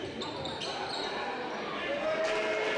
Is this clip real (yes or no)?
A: yes